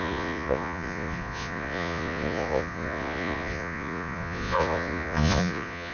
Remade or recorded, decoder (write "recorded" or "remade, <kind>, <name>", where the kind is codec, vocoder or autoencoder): remade, vocoder, Vocos